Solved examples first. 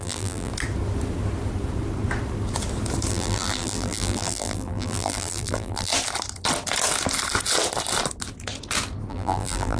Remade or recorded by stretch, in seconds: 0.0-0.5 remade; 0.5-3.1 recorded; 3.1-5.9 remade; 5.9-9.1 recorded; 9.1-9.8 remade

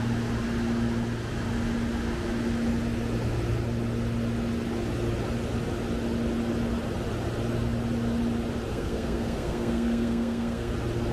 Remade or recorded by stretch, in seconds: 0.0-8.7 recorded; 8.7-10.7 remade; 10.7-11.1 recorded

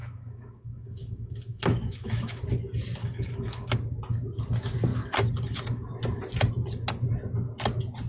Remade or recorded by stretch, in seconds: 0.0-2.5 remade; 2.5-3.0 recorded; 3.0-3.7 remade; 3.7-8.1 recorded